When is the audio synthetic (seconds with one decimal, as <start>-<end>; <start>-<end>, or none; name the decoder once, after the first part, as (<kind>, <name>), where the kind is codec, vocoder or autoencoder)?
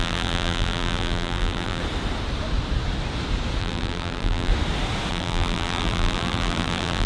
0.0-1.8 (vocoder, BigVGAN v2); 3.6-4.5; 5.1-7.1